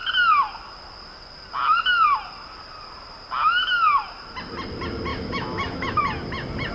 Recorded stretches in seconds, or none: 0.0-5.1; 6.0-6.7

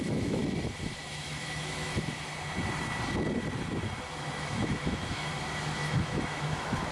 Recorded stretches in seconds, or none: 0.4-1.1; 1.9-4.3; 5.3-5.8

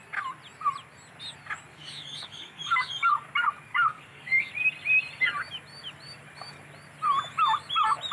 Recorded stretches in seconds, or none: 0.0-1.7; 3.1-3.7; 4.5-8.1

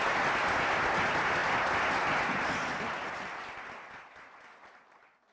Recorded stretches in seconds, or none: 0.0-5.3